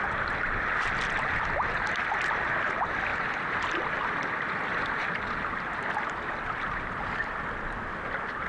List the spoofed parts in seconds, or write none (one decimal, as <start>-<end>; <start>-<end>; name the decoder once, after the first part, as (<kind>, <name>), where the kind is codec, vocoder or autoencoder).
none